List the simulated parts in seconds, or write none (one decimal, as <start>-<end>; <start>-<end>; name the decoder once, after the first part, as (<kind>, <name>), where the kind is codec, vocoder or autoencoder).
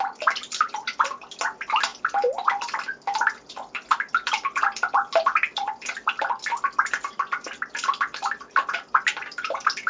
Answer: 0.0-9.9 (vocoder, BigVGAN v2)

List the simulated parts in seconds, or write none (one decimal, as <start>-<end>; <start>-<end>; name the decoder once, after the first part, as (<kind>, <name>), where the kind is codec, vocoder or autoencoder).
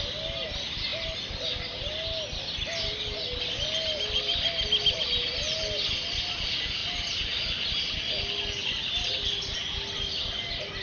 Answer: none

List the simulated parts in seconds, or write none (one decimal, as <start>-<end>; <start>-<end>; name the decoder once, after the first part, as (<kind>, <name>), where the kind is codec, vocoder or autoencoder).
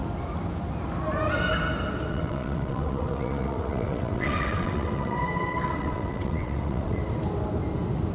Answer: 2.1-7.0 (vocoder, WaveNeXt)